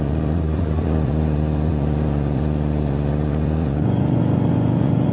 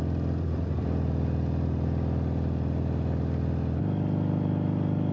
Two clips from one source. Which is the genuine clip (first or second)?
second